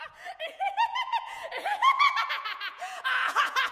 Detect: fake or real fake